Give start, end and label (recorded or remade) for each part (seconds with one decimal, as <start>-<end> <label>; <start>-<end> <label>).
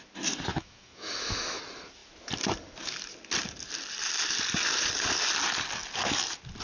0.0-0.5 recorded; 0.5-1.6 remade; 1.6-6.6 recorded